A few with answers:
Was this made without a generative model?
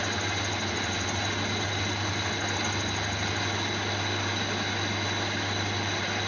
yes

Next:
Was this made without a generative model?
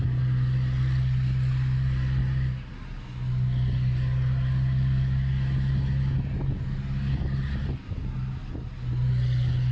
yes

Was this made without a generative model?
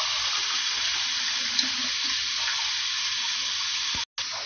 yes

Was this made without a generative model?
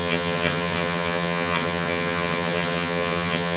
no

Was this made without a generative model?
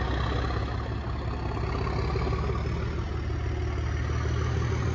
yes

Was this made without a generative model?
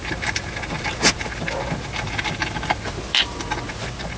yes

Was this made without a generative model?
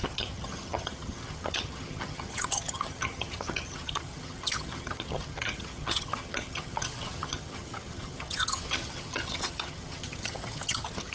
no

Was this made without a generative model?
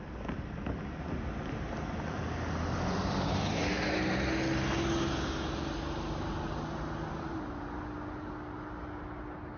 yes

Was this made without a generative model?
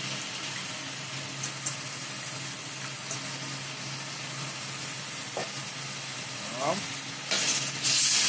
yes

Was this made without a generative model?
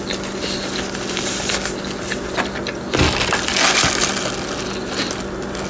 yes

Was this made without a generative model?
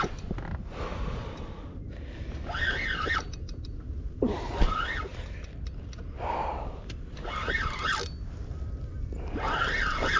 yes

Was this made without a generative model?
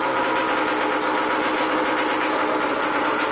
yes